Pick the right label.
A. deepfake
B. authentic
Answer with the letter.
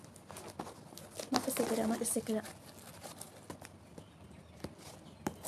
B